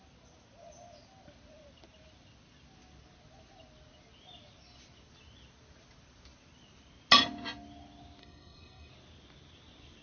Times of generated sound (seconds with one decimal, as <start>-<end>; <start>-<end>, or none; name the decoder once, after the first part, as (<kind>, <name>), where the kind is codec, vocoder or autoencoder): 8.2-8.9 (codec, SNAC)